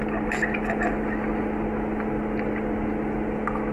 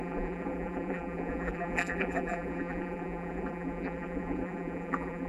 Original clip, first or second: first